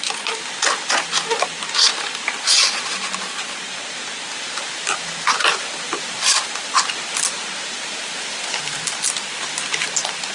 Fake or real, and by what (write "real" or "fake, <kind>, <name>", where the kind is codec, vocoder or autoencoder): real